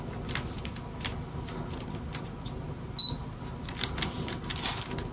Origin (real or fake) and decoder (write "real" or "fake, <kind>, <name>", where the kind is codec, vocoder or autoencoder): real